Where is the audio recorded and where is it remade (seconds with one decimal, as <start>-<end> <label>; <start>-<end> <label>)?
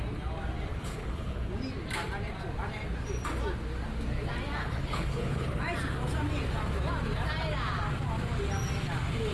0.0-0.7 recorded; 0.7-1.5 remade; 1.5-4.6 recorded; 4.6-5.6 remade; 5.6-9.3 recorded